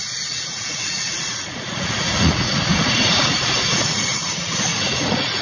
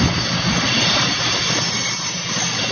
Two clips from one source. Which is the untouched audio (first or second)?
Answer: second